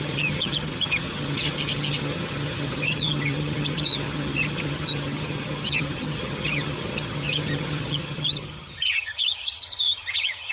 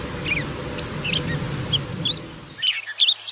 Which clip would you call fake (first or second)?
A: first